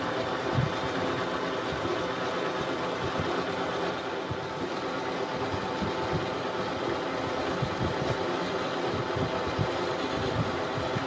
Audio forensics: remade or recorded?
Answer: recorded